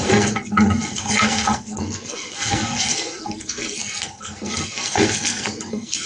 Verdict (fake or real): fake